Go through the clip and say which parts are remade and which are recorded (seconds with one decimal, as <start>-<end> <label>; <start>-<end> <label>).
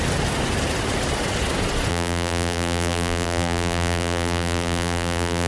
0.0-1.9 recorded; 1.9-5.5 remade